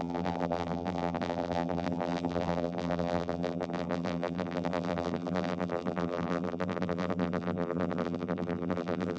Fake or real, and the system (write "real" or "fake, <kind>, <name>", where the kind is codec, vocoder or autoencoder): fake, vocoder, BigVGAN v2